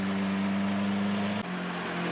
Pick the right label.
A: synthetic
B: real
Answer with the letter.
B